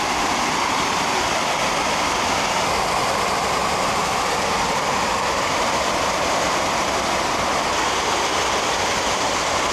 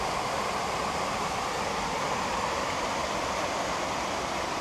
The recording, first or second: first